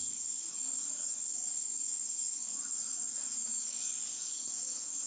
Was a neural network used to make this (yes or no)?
yes